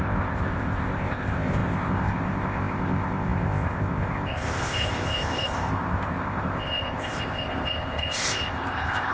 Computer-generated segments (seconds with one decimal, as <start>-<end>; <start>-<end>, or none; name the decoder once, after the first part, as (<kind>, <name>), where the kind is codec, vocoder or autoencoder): 0.0-9.1 (codec, ZipCodec)